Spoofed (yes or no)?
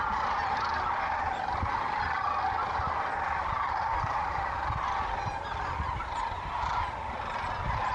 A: no